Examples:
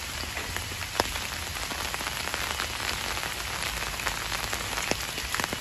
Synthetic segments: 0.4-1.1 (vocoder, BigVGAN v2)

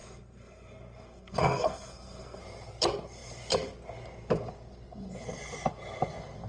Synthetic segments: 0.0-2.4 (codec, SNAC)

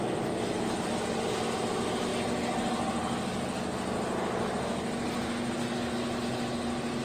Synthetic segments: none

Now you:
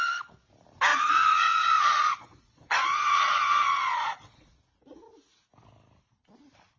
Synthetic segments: 0.9-5.0 (vocoder, Vocos)